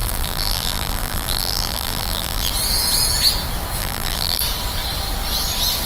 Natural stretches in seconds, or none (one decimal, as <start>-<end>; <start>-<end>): 2.5-3.8; 4.4-5.9